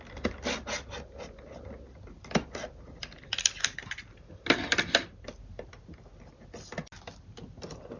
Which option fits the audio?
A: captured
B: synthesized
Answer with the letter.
A